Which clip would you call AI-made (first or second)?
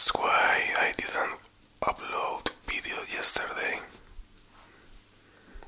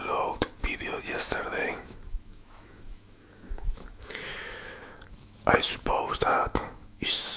second